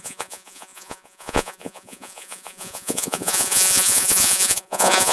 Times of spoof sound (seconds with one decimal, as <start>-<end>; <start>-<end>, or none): 0.0-5.1